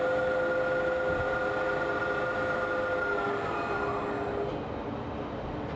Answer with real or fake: fake